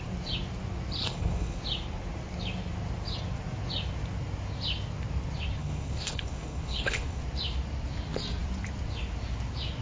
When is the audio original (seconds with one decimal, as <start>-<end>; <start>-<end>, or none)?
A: 0.0-1.0; 1.6-5.6; 7.2-9.8